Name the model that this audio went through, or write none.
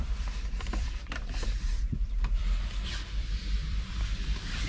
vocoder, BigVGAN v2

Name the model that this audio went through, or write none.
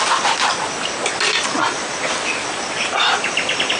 none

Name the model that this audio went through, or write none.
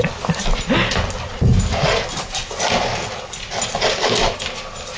none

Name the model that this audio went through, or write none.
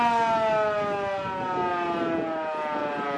none